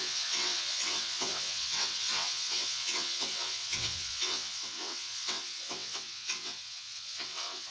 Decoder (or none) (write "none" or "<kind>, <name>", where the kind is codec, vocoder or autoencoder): vocoder, WaveNeXt